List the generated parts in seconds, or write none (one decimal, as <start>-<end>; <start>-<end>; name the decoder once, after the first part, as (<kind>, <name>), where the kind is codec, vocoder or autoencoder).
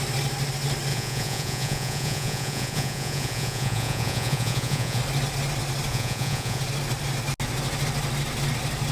0.9-5.0 (vocoder, Vocos); 5.9-6.6